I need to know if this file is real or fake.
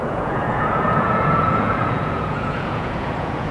fake